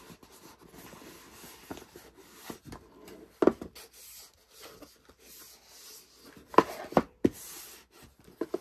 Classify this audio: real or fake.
real